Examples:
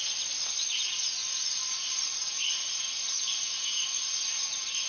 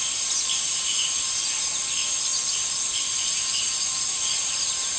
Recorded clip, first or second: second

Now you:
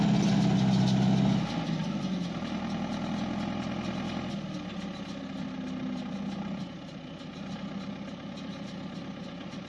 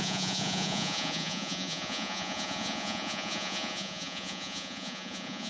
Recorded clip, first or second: first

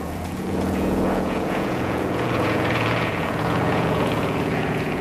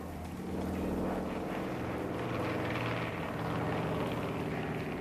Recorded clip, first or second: second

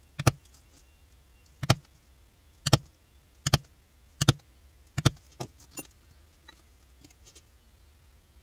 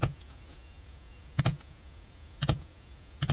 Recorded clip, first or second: first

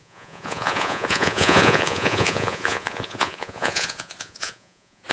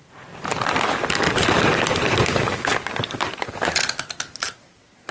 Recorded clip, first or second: second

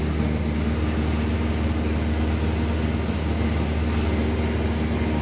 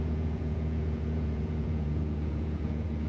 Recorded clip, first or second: first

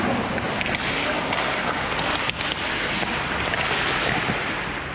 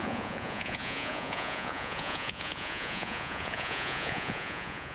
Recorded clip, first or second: first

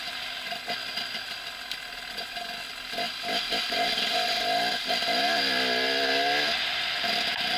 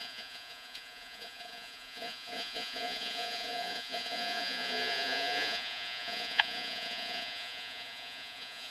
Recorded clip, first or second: first